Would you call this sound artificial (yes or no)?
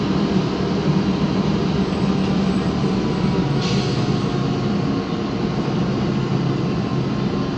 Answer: no